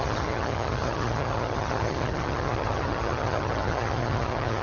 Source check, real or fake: fake